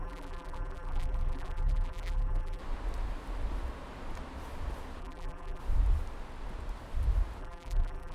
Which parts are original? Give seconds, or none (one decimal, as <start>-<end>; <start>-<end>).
2.6-5.0; 5.6-7.4